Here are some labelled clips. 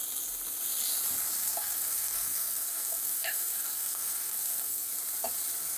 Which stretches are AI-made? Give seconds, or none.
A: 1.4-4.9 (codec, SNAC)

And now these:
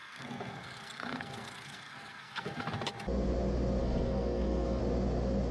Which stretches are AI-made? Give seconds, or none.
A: 0.0-2.7 (codec, SNAC); 3.8-4.8

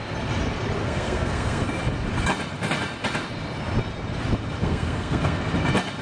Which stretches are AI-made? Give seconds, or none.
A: 0.8-1.8 (codec, SNAC); 4.6-5.4